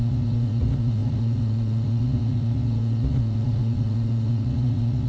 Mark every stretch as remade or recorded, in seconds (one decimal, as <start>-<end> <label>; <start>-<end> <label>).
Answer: 0.0-5.1 remade